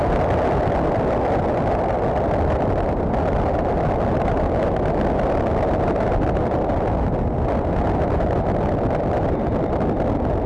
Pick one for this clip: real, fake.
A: real